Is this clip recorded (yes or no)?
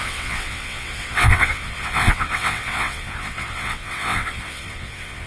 no